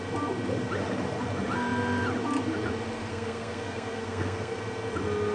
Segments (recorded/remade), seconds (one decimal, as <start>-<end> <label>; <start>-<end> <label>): 0.0-3.1 recorded; 3.1-4.6 remade; 4.6-5.3 recorded